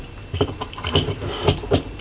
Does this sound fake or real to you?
real